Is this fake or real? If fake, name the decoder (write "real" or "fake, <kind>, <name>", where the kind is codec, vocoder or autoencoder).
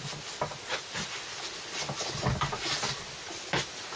real